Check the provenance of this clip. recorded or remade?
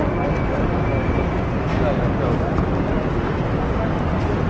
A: recorded